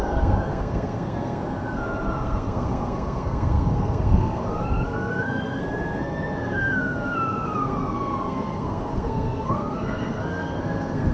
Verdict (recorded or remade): remade